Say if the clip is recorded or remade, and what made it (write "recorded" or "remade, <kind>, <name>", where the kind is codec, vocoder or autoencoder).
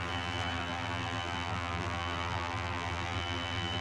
remade, vocoder, BigVGAN v2